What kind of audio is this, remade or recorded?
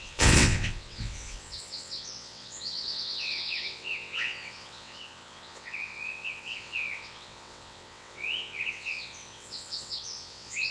remade